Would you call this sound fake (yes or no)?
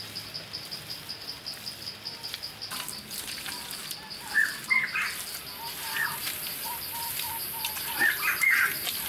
no